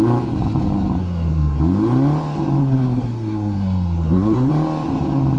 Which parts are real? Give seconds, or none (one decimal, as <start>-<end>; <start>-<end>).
0.0-1.0; 1.6-2.6; 4.5-5.4